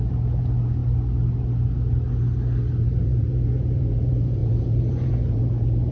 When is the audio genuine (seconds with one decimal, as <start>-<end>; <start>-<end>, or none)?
0.8-2.8